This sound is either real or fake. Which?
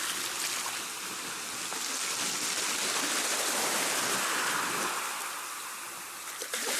real